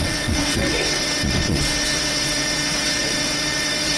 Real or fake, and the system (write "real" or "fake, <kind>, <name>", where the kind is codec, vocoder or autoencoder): fake, vocoder, WaveNeXt